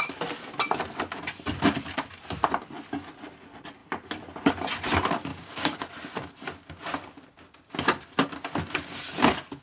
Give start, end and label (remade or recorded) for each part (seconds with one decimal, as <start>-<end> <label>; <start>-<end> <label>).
0.0-5.3 recorded; 5.3-5.8 remade; 5.8-9.6 recorded